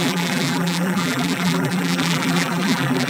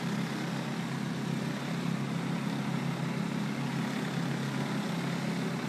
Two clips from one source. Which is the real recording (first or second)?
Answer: second